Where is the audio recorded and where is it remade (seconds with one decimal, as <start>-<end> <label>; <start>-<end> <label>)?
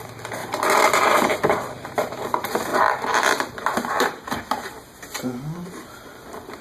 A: 0.0-0.4 recorded; 0.4-1.9 remade; 1.9-2.7 recorded; 2.7-4.7 remade; 4.7-6.6 recorded